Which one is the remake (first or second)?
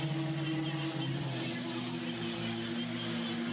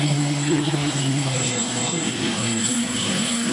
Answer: second